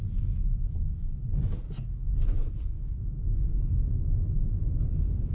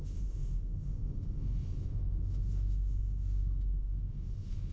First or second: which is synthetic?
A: second